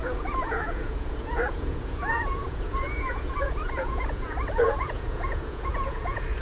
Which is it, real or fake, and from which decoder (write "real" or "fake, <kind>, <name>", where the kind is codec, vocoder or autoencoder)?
fake, vocoder, Vocos